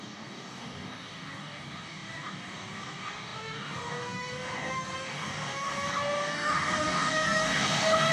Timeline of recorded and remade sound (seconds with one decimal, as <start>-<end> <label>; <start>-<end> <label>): 0.0-8.1 remade